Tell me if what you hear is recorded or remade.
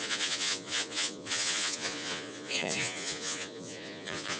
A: remade